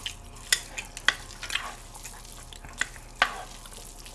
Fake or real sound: real